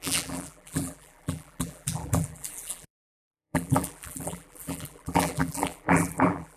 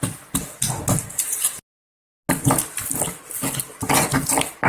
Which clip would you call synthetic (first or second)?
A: first